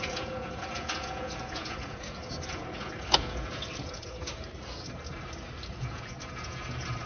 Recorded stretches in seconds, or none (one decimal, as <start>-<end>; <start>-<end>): 4.3-5.7